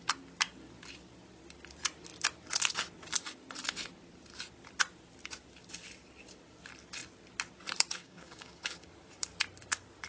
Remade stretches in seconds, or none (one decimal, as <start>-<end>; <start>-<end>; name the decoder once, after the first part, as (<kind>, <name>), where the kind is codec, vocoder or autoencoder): 8.0-8.9 (codec, DAC)